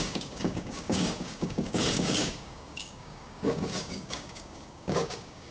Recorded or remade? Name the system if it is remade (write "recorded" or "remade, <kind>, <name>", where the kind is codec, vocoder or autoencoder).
remade, codec, DAC